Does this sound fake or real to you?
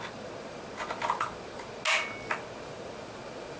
real